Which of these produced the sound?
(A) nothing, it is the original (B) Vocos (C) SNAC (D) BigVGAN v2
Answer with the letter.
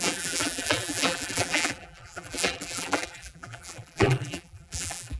D